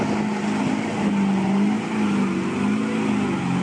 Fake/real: real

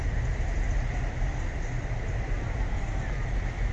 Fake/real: real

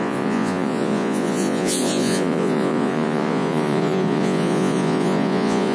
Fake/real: fake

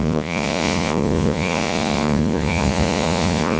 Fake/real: fake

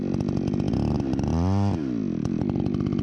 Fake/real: real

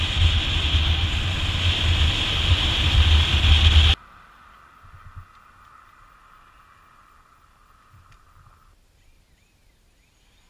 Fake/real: real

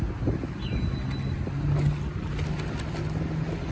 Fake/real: real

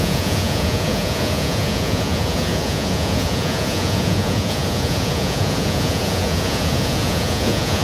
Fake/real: fake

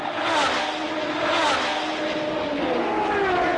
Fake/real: real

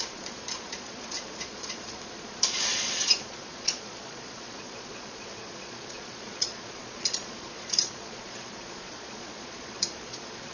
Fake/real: fake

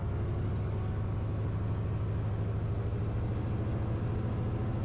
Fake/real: real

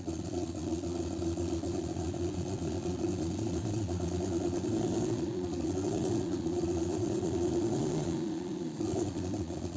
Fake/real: fake